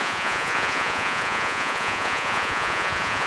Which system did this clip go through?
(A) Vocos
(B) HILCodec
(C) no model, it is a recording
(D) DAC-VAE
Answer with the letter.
A